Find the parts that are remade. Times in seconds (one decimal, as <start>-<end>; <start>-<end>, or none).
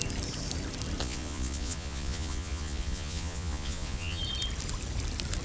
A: 1.0-4.2